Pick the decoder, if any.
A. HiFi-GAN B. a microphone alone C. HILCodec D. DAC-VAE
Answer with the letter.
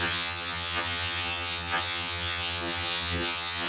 A